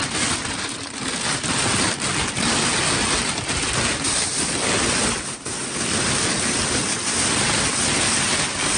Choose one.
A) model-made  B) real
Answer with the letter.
B